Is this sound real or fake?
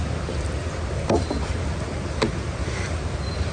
real